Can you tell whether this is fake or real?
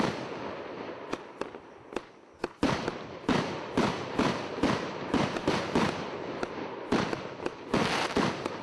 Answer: fake